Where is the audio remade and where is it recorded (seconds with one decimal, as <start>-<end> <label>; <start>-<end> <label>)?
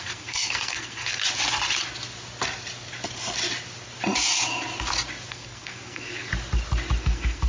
0.0-1.2 remade; 1.2-5.3 recorded; 5.3-6.3 remade; 6.3-7.0 recorded; 7.0-7.5 remade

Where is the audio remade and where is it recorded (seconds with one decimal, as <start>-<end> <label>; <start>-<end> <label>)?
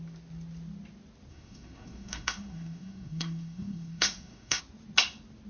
0.0-1.3 recorded; 1.3-4.6 remade; 4.6-5.5 recorded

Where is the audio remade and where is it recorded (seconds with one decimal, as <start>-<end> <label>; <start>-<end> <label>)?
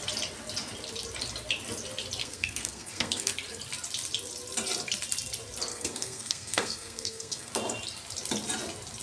0.0-2.2 recorded; 2.2-3.3 remade; 3.3-5.7 recorded; 5.7-7.5 remade; 7.5-9.0 recorded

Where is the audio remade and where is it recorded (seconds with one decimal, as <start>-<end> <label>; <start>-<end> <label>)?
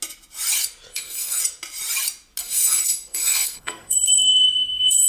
0.0-0.9 recorded; 0.9-1.4 remade; 1.4-2.4 recorded; 2.4-5.1 remade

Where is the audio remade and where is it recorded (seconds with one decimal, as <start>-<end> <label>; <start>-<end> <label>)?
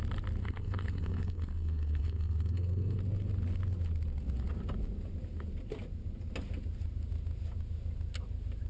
0.0-0.4 recorded; 0.4-3.0 remade; 3.0-8.7 recorded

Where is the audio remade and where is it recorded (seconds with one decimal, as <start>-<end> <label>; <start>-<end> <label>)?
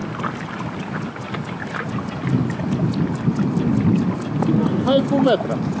0.0-4.5 recorded; 4.5-5.0 remade; 5.0-5.8 recorded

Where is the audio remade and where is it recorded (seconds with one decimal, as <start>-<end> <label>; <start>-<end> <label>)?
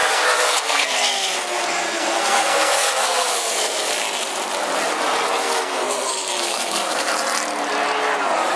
0.0-3.9 remade; 3.9-5.4 recorded; 5.4-7.1 remade; 7.1-8.6 recorded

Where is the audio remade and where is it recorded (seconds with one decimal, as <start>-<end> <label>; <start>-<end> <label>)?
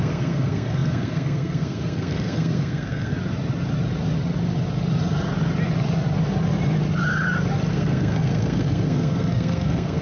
0.0-3.1 remade; 3.1-7.7 recorded; 7.7-10.0 remade